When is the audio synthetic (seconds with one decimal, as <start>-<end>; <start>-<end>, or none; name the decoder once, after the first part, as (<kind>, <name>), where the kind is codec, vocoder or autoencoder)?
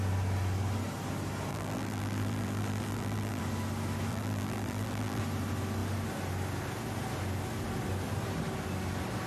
1.5-3.4 (vocoder, BigVGAN v2); 4.1-5.2